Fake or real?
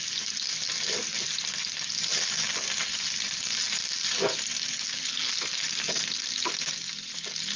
real